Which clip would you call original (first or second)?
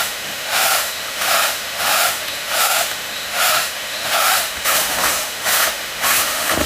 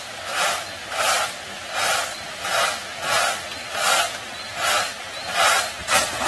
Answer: second